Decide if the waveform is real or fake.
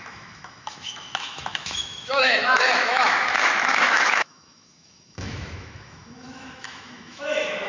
fake